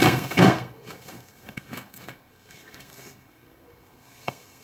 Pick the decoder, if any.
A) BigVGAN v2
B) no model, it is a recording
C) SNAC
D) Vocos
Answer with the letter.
C